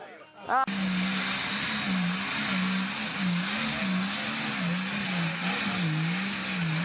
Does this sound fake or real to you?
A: real